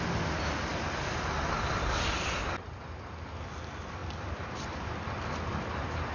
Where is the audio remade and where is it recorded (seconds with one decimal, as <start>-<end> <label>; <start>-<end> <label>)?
0.0-6.1 recorded